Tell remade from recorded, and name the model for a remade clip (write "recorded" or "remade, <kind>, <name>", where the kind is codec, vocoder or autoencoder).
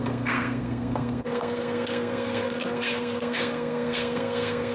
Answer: remade, codec, SNAC